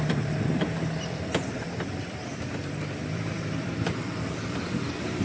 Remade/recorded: remade